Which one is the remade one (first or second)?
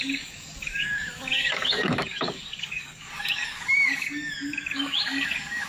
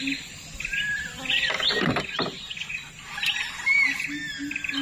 first